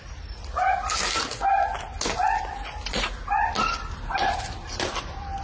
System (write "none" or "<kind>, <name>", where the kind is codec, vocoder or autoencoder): none